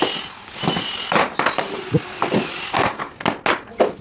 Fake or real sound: real